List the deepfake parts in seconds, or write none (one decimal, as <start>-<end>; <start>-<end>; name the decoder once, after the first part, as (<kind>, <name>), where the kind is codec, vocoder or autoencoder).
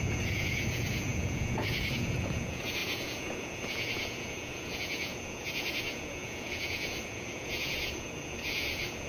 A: 0.0-9.1 (vocoder, Vocos)